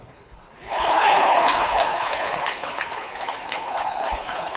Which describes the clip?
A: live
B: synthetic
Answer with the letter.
B